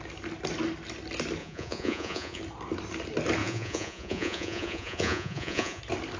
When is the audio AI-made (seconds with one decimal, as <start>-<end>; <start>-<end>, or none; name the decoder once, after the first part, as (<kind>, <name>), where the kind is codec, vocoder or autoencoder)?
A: 1.4-2.4 (vocoder, Vocos); 3.4-5.8